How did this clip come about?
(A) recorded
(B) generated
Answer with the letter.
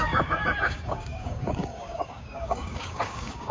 B